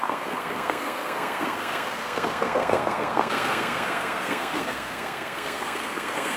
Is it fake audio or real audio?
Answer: fake